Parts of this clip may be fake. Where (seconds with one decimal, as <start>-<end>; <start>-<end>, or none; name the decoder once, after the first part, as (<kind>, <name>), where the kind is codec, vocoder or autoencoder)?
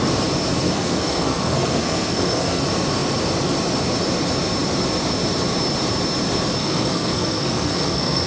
0.6-2.6 (codec, SNAC); 6.6-8.3